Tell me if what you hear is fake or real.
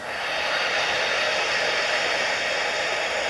real